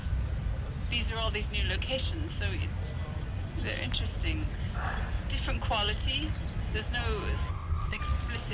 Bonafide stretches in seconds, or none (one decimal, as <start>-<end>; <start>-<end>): 0.0-7.5; 8.0-8.5